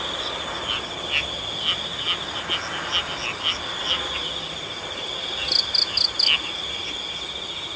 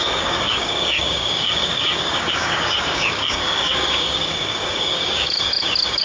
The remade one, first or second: second